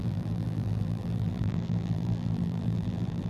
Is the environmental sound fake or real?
fake